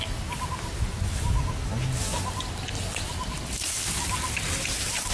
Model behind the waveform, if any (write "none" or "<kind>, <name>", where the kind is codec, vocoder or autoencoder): none